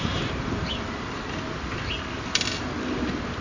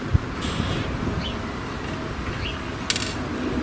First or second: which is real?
second